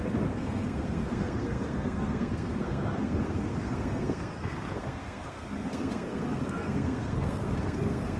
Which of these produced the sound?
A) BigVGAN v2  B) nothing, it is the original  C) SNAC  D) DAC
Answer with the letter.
C